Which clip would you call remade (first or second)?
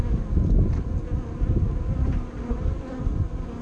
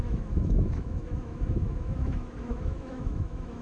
second